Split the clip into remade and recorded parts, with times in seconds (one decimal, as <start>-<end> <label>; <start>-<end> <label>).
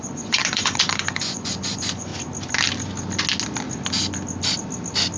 0.0-2.1 remade; 2.1-5.2 recorded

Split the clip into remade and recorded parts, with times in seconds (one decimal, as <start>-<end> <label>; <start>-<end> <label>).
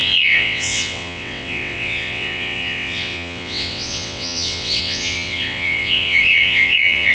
0.0-7.1 remade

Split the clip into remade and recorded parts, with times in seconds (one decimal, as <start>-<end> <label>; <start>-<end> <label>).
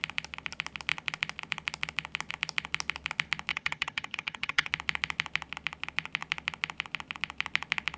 0.0-3.5 recorded; 3.5-4.7 remade; 4.7-8.0 recorded